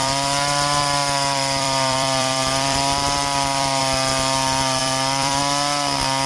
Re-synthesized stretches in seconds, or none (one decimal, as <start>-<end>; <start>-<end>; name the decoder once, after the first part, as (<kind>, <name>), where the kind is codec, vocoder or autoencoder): 0.0-3.8 (vocoder, BigVGAN v2); 4.8-5.4